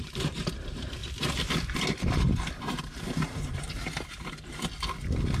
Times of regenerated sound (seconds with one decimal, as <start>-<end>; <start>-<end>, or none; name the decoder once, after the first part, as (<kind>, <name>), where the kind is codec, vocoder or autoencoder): 0.0-1.0 (vocoder, BigVGAN v2); 1.8-3.8